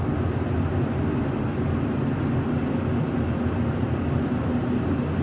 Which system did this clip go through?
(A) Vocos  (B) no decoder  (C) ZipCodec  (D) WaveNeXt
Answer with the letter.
B